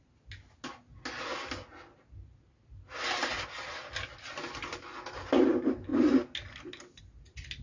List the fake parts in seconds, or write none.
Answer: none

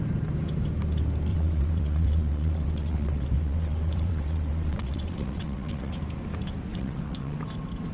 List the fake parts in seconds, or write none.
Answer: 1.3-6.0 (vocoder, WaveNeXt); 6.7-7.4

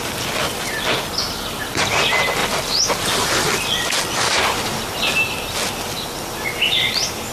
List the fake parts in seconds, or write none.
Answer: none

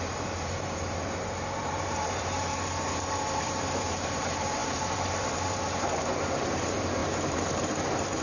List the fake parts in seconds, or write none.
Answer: 0.0-2.5 (vocoder, BigVGAN v2); 3.4-8.2

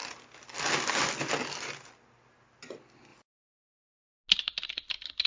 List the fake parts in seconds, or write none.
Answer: none

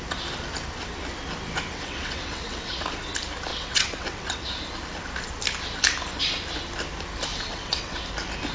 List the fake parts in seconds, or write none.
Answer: 1.7-2.7 (vocoder, WaveNeXt); 3.5-4.5; 7.3-8.0